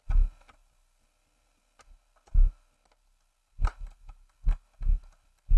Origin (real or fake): real